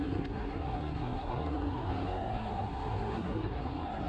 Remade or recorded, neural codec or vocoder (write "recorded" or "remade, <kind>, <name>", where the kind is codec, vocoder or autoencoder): remade, codec, SNAC